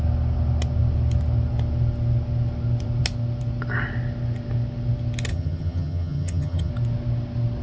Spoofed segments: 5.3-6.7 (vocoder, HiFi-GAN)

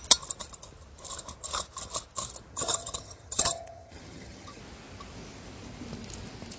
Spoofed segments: 2.5-4.6 (vocoder, HiFi-GAN)